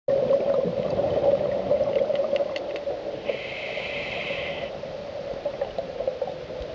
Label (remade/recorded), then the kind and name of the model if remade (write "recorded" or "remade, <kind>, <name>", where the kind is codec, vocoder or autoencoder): recorded